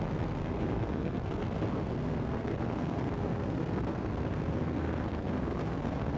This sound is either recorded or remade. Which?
remade